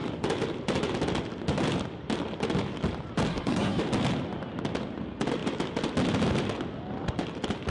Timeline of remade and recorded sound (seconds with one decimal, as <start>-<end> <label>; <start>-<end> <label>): 0.0-3.3 recorded; 3.3-3.8 remade; 3.8-7.7 recorded